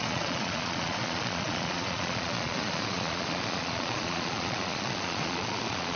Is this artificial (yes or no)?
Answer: yes